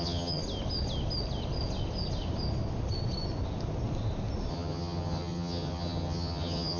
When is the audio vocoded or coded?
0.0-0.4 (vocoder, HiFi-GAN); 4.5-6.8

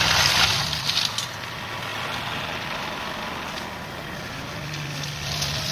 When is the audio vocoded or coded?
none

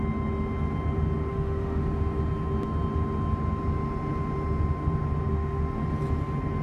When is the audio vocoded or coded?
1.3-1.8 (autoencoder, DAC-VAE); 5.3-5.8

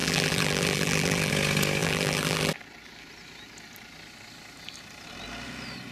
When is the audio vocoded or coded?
0.0-1.3 (vocoder, BigVGAN v2); 1.8-2.5

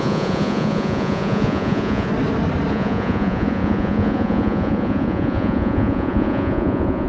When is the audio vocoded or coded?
0.0-2.1 (vocoder, Vocos); 2.7-7.1

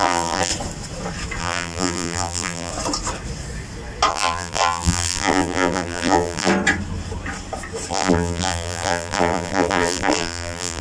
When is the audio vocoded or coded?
0.0-0.5 (vocoder, BigVGAN v2); 1.4-2.7; 4.1-6.5; 7.9-10.8